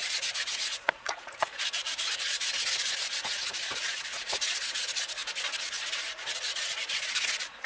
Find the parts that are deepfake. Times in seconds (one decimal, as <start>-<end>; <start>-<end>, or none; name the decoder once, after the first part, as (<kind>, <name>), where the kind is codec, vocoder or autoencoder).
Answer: 0.0-5.2 (vocoder, Vocos); 5.9-7.7